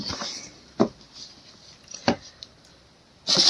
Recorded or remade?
remade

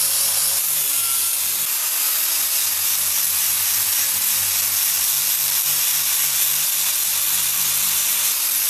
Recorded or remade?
recorded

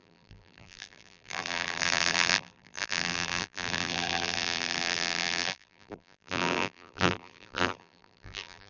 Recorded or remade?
remade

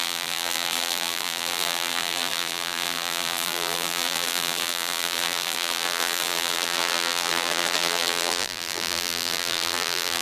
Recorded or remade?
remade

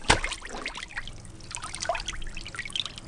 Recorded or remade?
recorded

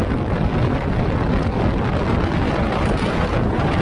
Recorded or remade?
recorded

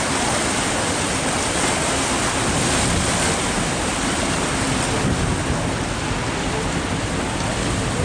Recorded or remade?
recorded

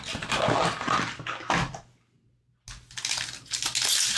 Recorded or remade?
recorded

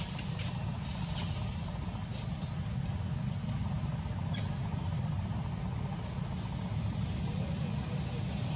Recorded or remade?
recorded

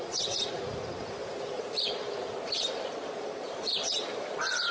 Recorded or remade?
remade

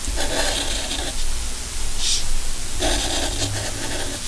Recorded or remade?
recorded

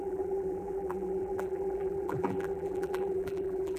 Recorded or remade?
remade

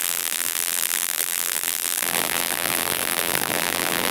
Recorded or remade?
remade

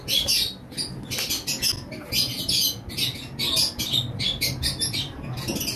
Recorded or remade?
recorded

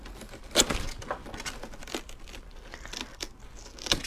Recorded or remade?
recorded